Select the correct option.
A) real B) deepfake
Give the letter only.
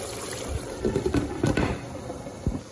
B